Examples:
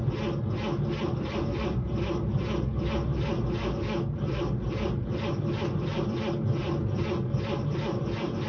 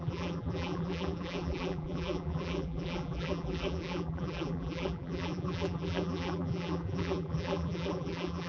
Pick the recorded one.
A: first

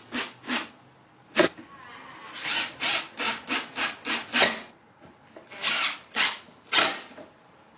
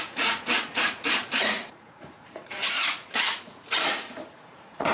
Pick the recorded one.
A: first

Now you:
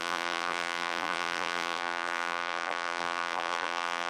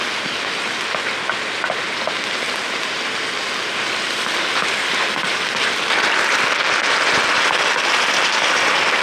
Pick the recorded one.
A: second